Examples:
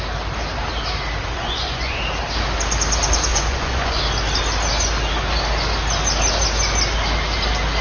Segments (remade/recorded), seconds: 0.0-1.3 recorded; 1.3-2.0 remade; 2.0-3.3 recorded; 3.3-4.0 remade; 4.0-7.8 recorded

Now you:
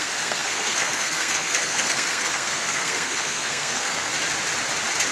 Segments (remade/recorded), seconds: 0.0-4.1 remade; 4.1-5.1 recorded